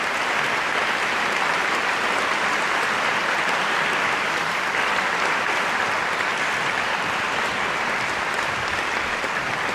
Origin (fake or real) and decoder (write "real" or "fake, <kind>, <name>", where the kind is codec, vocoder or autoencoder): fake, vocoder, BigVGAN v2